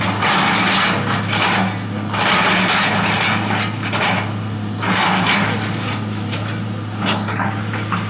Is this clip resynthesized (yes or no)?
no